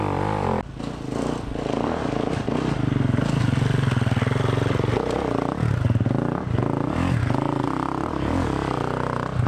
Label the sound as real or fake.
real